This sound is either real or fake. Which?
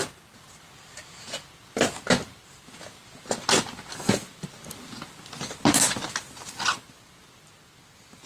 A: real